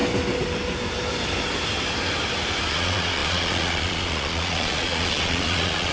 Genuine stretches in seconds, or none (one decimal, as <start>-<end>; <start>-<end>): 0.0-2.7